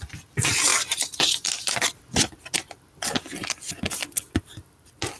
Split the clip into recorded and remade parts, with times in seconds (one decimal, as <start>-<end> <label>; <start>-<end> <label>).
0.0-5.2 recorded